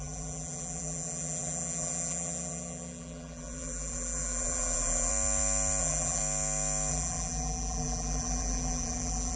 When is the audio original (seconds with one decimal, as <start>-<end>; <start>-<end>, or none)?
5.1-5.8; 6.2-6.9